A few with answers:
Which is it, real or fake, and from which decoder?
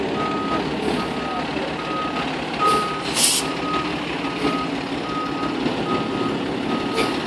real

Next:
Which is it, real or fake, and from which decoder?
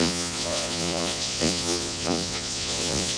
fake, vocoder, Vocos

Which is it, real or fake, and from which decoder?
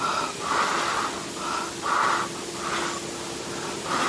real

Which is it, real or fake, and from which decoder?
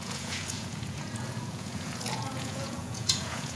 fake, vocoder, Vocos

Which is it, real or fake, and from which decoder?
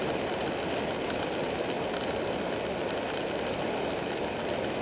real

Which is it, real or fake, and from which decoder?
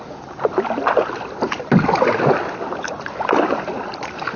real